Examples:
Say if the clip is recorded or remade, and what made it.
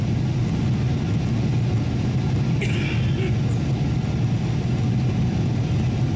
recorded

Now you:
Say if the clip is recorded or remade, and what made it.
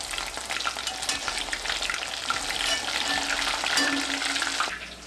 recorded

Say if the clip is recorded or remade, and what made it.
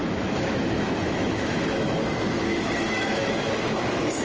remade, autoencoder, DAC-VAE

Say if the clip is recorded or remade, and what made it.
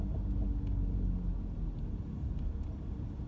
recorded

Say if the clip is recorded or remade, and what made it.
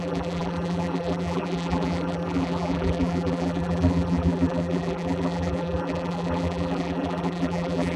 remade, vocoder, BigVGAN v2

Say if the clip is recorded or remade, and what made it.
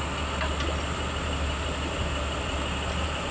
recorded